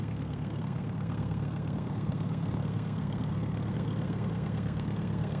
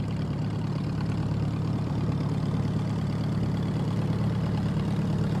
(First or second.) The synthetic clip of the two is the first